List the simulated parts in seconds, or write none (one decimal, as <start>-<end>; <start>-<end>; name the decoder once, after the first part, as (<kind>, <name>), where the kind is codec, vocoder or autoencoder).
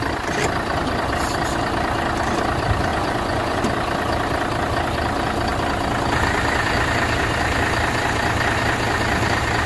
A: 2.9-3.6 (vocoder, Vocos)